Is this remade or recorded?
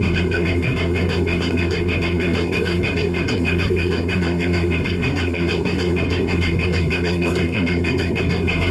remade